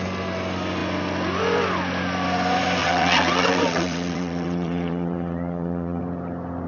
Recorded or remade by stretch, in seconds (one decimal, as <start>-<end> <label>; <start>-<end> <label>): 0.0-2.8 recorded; 2.8-6.0 remade; 6.0-6.7 recorded